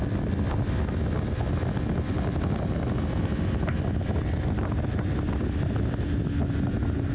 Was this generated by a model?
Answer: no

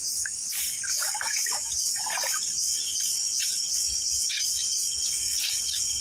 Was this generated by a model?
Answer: yes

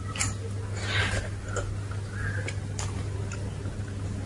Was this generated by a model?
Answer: no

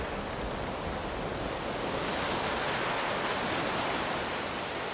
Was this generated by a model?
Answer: no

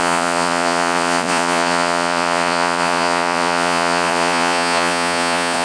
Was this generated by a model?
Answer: yes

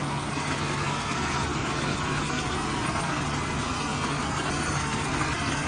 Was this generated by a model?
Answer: yes